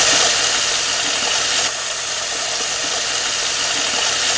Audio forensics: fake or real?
real